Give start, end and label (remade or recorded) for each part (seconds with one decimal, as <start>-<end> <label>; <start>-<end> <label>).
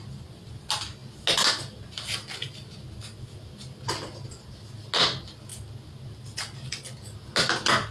0.0-7.9 recorded